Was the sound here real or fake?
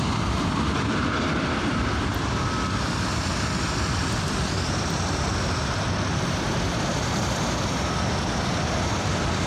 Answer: real